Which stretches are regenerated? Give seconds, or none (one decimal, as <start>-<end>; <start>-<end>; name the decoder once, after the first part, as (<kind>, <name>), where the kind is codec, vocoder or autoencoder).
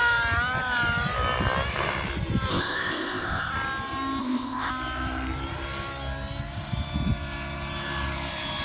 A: 2.5-3.5 (codec, ZipCodec); 4.2-4.7